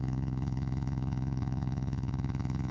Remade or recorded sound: remade